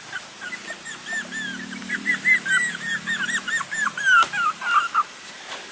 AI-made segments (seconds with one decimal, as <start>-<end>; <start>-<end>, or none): 1.8-2.7